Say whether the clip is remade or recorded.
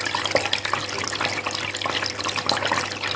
recorded